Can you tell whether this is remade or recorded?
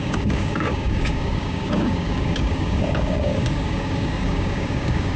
remade